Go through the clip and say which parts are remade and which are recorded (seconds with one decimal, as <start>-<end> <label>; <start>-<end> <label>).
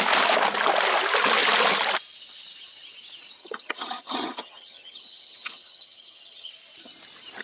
0.0-3.4 recorded; 3.4-6.5 remade; 6.5-7.4 recorded